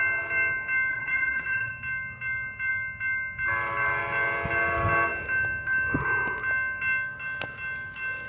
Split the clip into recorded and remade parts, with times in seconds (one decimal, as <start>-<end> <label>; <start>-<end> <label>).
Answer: 0.0-0.9 recorded; 0.9-1.7 remade; 1.7-8.3 recorded